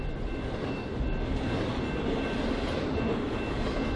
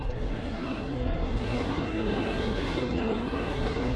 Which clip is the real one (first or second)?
first